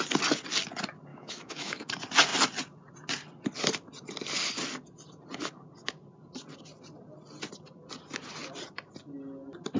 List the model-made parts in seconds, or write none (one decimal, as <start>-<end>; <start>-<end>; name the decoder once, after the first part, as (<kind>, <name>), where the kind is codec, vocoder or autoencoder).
1.1-1.9 (autoencoder, DAC-VAE)